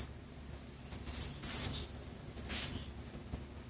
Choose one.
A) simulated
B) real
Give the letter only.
B